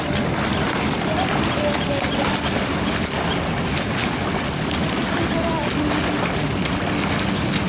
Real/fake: real